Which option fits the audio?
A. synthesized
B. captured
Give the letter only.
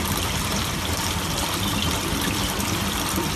A